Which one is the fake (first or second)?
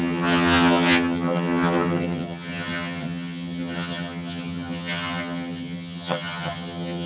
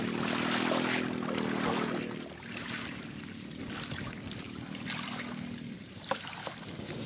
first